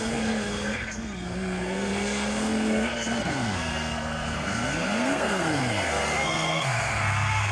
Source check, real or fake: fake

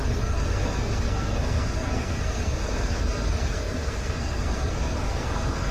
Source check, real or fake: fake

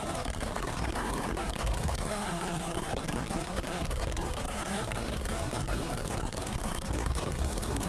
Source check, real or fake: fake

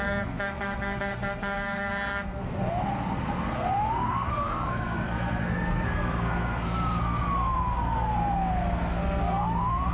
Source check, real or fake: fake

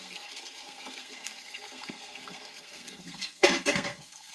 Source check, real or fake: fake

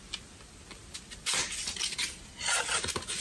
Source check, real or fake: real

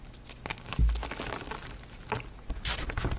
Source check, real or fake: real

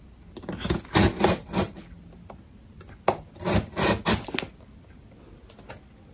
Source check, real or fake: real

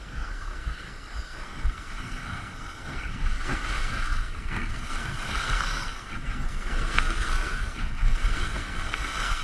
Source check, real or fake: fake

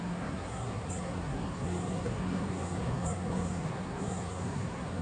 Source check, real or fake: fake